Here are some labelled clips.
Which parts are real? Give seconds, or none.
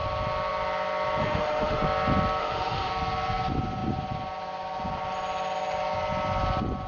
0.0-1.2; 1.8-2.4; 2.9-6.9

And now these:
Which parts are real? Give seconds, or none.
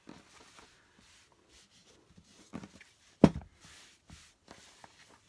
0.0-5.3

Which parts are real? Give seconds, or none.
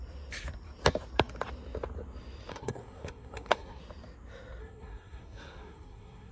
0.0-2.5; 3.8-4.6